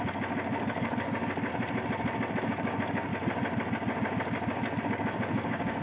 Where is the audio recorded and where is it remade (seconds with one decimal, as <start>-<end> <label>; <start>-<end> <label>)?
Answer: 0.0-1.5 remade; 1.5-2.4 recorded; 2.4-3.1 remade; 3.1-4.8 recorded; 4.8-5.8 remade

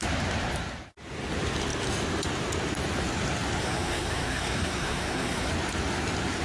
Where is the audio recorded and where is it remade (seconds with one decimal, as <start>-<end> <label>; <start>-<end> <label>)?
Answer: 0.0-3.6 recorded; 3.6-5.5 remade; 5.5-6.4 recorded